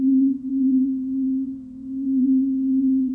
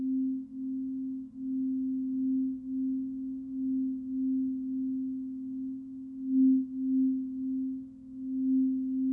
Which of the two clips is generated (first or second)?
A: first